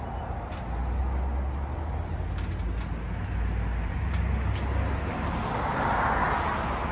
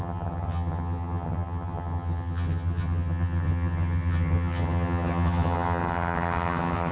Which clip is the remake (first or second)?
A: second